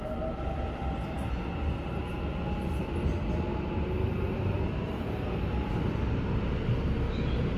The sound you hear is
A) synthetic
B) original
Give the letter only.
B